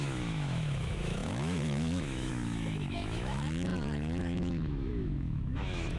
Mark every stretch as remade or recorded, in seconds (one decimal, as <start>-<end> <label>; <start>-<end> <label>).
0.0-6.0 remade